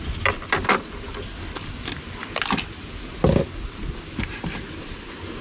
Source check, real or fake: real